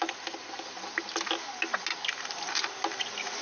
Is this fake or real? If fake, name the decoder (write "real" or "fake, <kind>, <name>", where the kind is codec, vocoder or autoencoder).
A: real